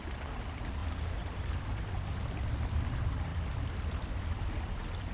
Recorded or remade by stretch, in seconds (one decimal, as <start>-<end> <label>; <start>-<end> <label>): 0.0-5.1 recorded